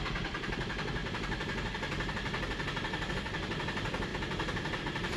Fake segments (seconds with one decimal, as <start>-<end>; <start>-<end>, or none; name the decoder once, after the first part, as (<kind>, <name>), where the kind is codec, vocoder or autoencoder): 0.0-1.0 (vocoder, BigVGAN v2); 3.1-4.1; 4.8-5.2